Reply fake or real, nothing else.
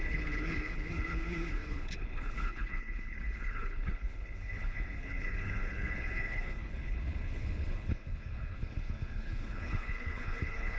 fake